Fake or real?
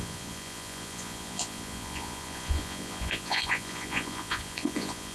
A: fake